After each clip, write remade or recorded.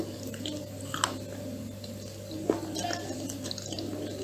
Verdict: recorded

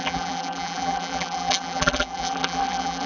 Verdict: remade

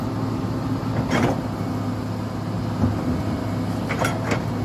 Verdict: recorded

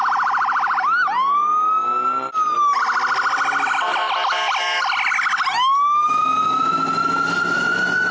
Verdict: recorded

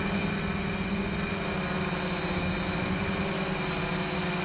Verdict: recorded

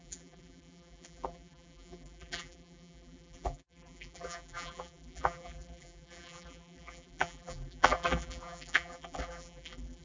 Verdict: remade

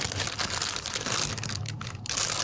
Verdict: recorded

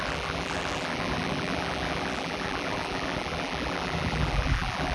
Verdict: remade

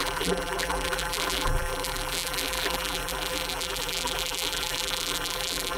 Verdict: remade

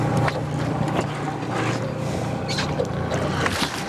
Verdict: recorded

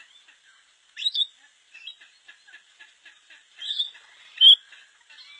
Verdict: remade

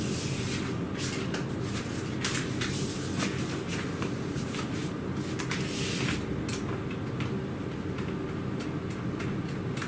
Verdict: recorded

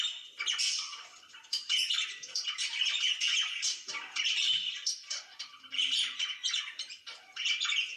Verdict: remade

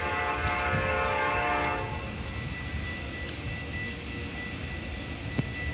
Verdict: recorded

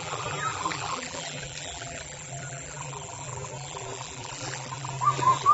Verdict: remade